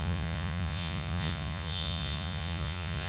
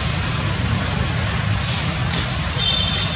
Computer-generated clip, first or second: first